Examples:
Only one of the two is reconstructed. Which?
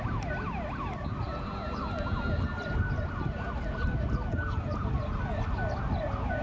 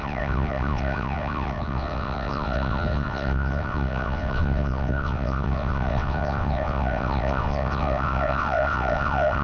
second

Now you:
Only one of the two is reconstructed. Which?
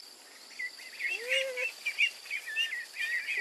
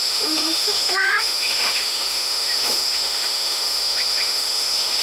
second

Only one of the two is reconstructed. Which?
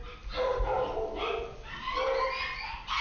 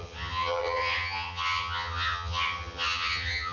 second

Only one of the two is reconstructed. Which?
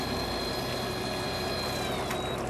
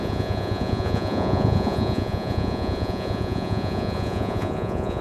second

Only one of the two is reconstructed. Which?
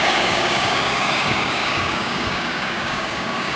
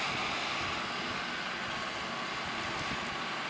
first